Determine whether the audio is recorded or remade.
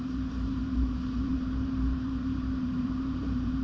remade